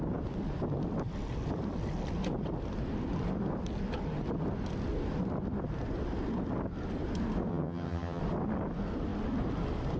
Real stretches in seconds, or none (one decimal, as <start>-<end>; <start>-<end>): 0.0-7.5; 8.2-10.0